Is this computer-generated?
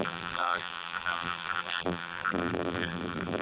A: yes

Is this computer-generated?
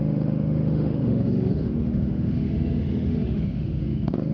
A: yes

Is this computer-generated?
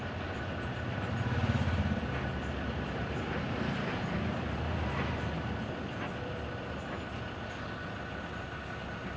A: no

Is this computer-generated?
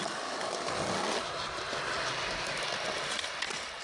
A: no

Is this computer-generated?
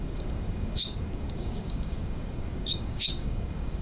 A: yes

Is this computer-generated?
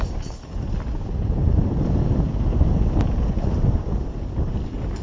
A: no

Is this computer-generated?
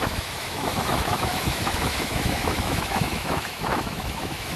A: yes